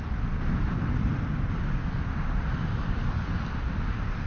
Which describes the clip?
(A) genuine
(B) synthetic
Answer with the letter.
A